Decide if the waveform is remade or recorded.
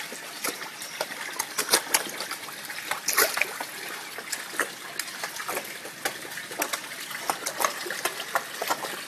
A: recorded